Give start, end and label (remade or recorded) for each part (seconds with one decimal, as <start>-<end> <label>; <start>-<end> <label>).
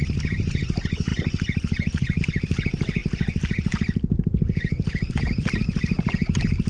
0.0-6.7 recorded